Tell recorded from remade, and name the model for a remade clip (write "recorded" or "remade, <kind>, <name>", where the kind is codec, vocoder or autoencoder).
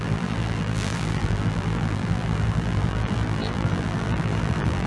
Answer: remade, vocoder, BigVGAN v2